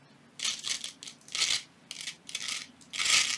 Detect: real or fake real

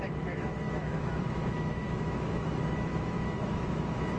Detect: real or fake fake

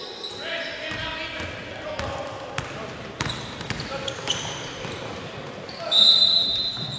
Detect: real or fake real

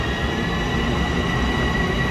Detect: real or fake real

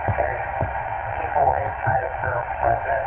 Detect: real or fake fake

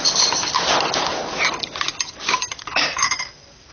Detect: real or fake real